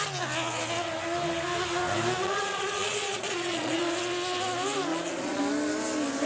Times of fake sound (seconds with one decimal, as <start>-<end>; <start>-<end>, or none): 2.2-3.9; 4.9-5.4